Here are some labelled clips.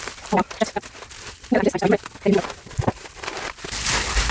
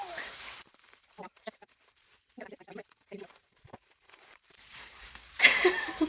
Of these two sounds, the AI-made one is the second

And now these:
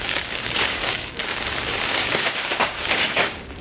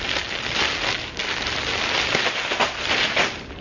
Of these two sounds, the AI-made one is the first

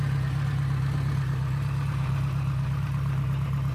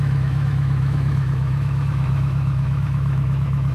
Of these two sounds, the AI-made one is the second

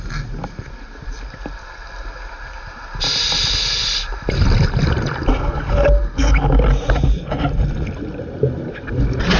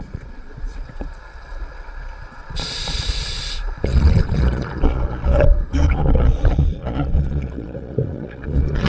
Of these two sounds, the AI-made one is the second